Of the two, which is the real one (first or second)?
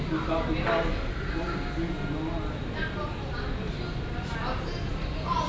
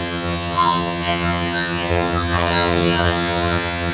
first